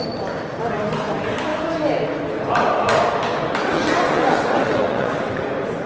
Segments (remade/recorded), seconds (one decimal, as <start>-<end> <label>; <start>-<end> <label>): 0.0-3.6 recorded; 3.6-5.4 remade; 5.4-5.9 recorded